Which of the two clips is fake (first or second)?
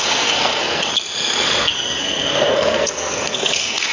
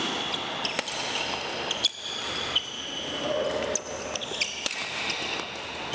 first